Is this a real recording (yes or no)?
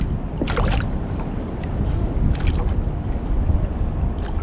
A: yes